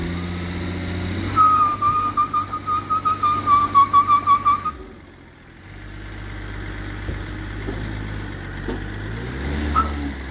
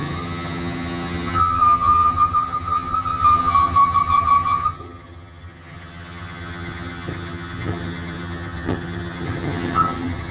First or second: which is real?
first